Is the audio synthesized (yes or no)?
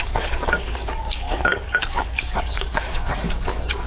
yes